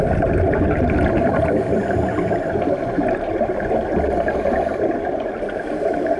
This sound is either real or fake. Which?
real